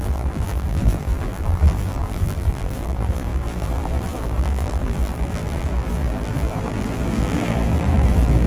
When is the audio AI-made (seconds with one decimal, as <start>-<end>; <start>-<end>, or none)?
0.0-8.5